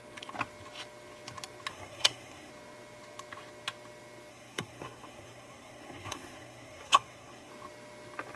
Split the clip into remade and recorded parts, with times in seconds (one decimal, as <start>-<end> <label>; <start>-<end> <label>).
0.0-1.7 recorded; 1.7-2.5 remade; 2.5-4.3 recorded; 4.3-7.5 remade; 7.5-8.4 recorded